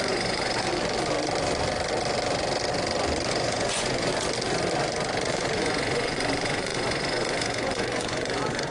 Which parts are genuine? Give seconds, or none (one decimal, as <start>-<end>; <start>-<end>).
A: 0.7-3.3; 4.1-5.3